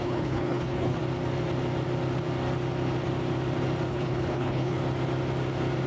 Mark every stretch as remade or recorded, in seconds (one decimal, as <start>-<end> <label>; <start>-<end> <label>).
0.0-1.0 remade; 1.0-3.9 recorded; 3.9-4.8 remade; 4.8-5.9 recorded